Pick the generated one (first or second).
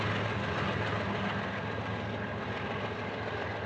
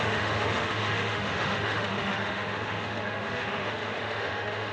second